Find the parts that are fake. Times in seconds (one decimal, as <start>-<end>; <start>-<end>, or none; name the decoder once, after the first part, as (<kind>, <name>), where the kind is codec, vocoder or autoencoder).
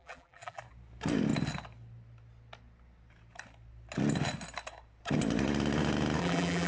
0.0-0.6 (vocoder, BigVGAN v2); 6.2-6.7